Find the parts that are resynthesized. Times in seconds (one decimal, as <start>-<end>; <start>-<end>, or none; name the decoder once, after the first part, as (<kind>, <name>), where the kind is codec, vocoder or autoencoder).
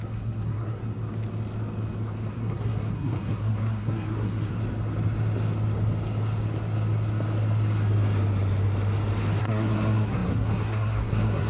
0.0-0.8 (codec, SNAC); 2.3-4.5; 9.4-11.5